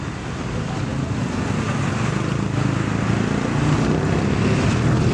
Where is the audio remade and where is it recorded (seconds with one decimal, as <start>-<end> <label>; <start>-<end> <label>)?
0.0-5.1 recorded

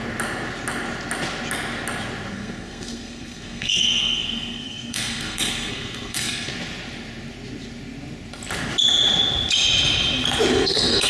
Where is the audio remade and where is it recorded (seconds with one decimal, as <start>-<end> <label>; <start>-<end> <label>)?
0.0-2.3 recorded; 2.3-6.5 remade; 6.5-10.5 recorded; 10.5-11.1 remade

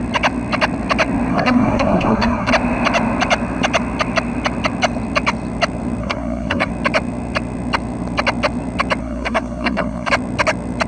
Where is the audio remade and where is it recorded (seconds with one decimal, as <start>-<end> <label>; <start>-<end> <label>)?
0.0-1.3 recorded; 1.3-2.5 remade; 2.5-6.0 recorded; 6.0-6.7 remade; 6.7-9.0 recorded; 9.0-10.1 remade; 10.1-10.9 recorded

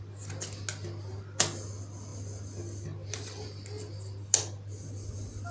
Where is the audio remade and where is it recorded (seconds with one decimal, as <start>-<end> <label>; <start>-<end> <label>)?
0.0-5.5 recorded

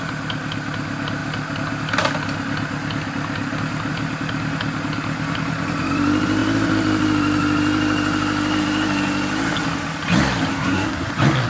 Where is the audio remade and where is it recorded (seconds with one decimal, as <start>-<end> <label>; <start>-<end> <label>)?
0.0-10.5 recorded; 10.5-11.1 remade; 11.1-11.5 recorded

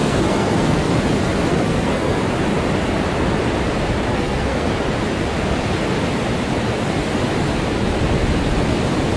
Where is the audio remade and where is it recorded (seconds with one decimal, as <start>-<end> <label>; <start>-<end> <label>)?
0.0-0.9 remade; 0.9-1.5 recorded; 1.5-2.2 remade; 2.2-4.1 recorded; 4.1-4.7 remade; 4.7-9.2 recorded